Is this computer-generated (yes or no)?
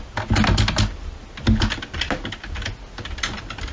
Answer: no